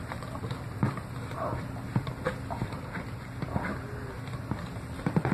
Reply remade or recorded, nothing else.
recorded